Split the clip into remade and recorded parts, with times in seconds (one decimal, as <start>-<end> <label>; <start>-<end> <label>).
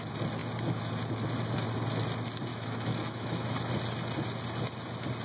0.0-2.5 recorded; 2.5-3.5 remade; 3.5-5.2 recorded